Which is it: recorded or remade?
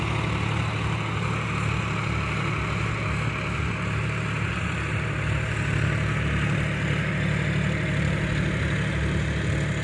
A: recorded